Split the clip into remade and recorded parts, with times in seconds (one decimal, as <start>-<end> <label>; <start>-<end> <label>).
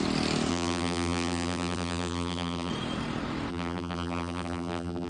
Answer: 0.0-0.5 recorded; 0.5-2.7 remade; 2.7-3.5 recorded; 3.5-5.1 remade